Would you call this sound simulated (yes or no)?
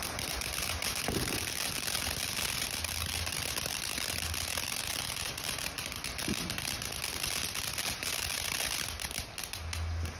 no